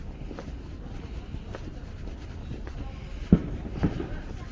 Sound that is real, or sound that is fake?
real